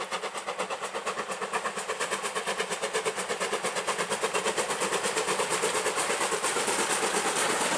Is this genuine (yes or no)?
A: yes